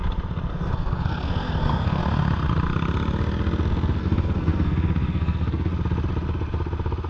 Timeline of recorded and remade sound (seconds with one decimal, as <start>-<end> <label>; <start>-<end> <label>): 0.0-0.5 recorded; 0.5-2.0 remade; 2.0-4.0 recorded; 4.0-5.7 remade; 5.7-7.1 recorded